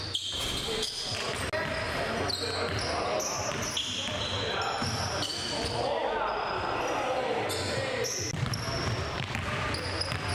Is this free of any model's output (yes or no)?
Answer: yes